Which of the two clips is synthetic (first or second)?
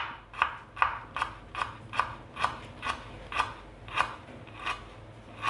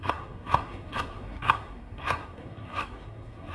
second